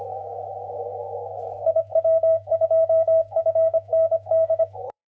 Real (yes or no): no